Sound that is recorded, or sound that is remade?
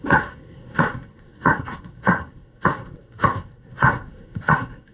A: remade